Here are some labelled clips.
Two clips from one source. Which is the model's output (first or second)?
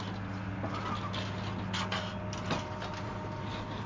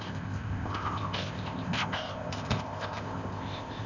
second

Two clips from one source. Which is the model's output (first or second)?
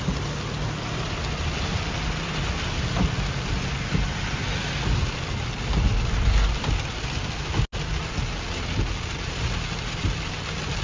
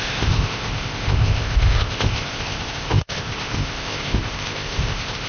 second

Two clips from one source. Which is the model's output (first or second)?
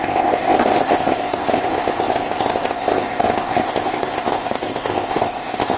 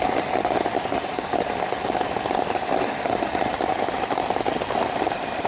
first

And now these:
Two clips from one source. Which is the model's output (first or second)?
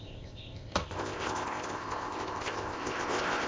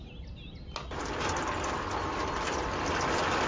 first